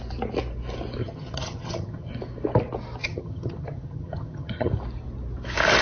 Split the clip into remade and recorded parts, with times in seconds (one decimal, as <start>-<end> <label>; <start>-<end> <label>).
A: 0.0-1.0 recorded; 1.0-2.1 remade; 2.1-3.0 recorded; 3.0-4.7 remade; 4.7-5.8 recorded